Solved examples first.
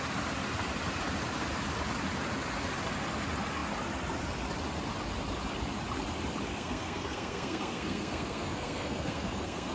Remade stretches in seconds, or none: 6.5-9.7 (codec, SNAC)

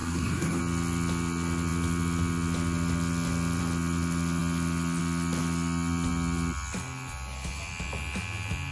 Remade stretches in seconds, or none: 0.0-0.6 (codec, SNAC)